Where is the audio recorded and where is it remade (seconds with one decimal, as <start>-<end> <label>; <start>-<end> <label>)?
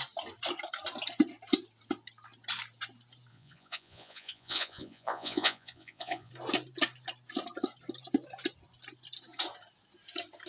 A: 0.0-3.3 recorded; 3.3-6.3 remade; 6.3-10.5 recorded